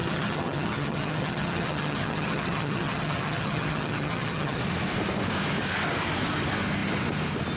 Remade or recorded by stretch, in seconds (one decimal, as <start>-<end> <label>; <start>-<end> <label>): 0.0-4.6 remade; 4.6-7.6 recorded